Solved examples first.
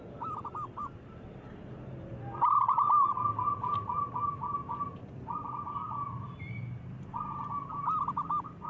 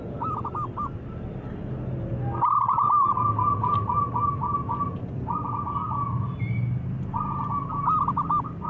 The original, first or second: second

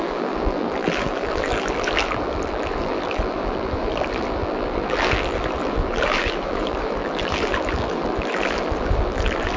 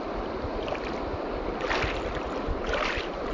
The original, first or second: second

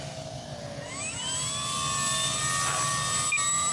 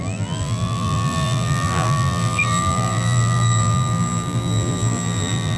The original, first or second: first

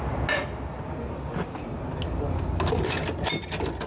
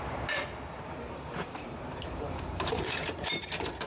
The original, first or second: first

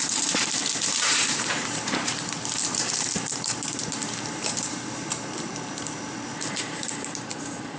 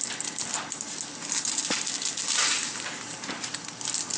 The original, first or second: second